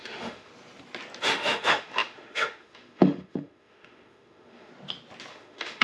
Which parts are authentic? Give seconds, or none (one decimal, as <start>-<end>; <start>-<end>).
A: 0.5-1.2; 4.7-5.3

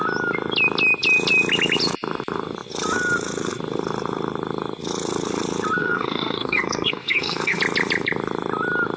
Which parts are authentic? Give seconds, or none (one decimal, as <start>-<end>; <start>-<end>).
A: 0.0-5.8; 7.6-9.0

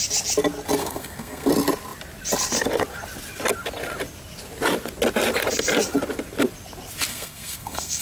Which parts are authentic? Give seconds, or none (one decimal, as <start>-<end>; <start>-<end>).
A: 0.0-0.8; 1.5-7.1

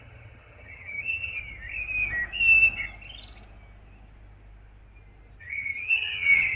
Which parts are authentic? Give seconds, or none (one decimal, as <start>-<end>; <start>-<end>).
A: 1.4-5.4

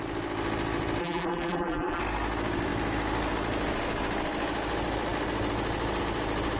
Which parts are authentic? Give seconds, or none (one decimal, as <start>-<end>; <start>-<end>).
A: 0.0-1.0; 2.0-6.6

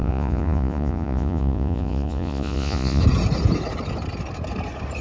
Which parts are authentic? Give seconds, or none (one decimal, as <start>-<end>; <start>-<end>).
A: 3.0-5.0

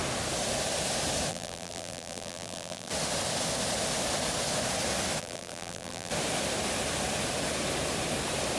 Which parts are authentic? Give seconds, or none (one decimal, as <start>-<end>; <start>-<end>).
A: 0.0-1.3; 2.9-5.2; 6.1-8.6